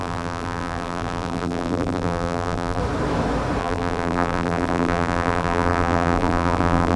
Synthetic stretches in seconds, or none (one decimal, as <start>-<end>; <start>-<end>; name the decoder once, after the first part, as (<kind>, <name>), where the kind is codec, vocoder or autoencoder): 0.0-2.8 (vocoder, BigVGAN v2); 3.6-7.0